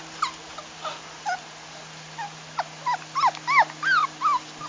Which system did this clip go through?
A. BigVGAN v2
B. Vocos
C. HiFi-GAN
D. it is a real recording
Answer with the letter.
D